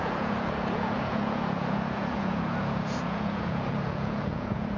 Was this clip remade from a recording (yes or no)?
yes